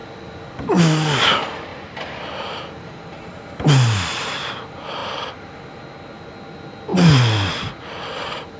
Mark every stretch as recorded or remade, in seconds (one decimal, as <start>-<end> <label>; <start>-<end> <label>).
0.0-1.7 recorded; 1.7-3.4 remade; 3.4-5.0 recorded; 5.0-5.7 remade; 5.7-8.6 recorded

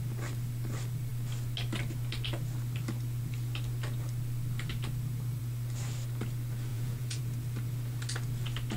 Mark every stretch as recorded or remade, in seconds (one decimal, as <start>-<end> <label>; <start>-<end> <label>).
0.0-6.7 recorded; 6.7-7.2 remade; 7.2-8.8 recorded

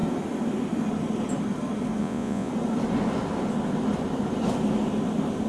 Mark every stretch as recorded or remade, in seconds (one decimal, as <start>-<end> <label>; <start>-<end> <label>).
0.0-2.0 recorded; 2.0-2.5 remade; 2.5-5.5 recorded